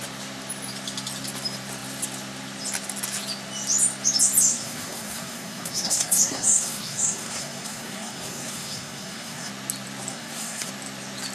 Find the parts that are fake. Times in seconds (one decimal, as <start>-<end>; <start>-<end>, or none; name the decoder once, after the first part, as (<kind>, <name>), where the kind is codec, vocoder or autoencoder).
4.5-9.5 (codec, SNAC); 10.1-10.7